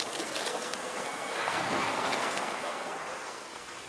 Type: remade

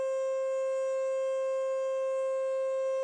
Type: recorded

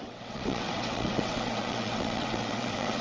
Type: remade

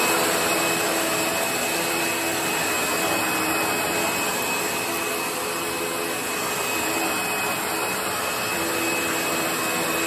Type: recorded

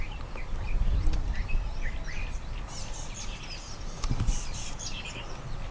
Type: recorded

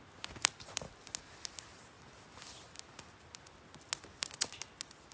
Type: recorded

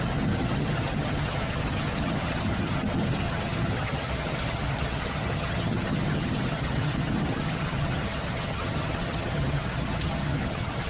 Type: remade